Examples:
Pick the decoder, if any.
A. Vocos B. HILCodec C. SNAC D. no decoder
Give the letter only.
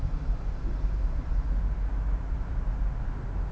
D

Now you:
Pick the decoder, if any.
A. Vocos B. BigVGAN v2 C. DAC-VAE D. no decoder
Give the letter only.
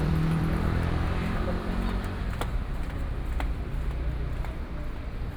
B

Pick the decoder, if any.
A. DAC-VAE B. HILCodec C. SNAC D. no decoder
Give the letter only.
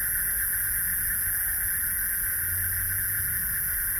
D